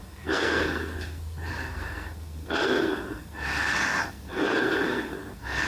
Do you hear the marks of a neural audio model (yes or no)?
yes